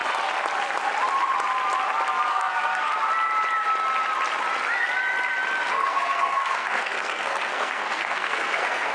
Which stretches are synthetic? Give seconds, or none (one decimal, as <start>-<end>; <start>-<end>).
2.3-2.9; 5.7-8.9